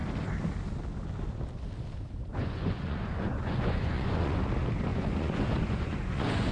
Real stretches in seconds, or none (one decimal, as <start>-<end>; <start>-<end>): 0.0-2.3; 4.4-4.9